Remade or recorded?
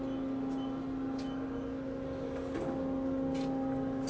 recorded